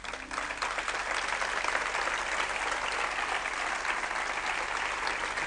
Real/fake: real